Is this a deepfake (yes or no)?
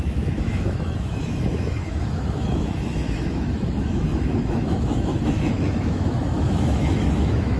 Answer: yes